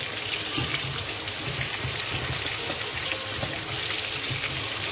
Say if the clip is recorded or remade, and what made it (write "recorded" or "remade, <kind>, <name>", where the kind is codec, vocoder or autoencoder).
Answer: recorded